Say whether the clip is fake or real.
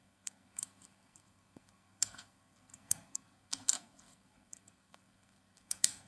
fake